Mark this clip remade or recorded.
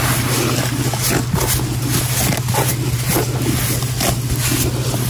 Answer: recorded